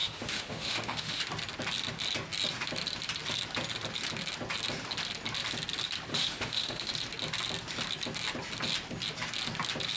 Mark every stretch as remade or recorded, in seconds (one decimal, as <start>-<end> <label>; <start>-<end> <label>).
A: 0.0-1.2 remade; 1.2-6.1 recorded; 6.1-6.9 remade; 6.9-10.0 recorded